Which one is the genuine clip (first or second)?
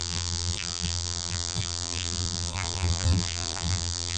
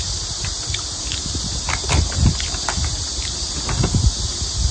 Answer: second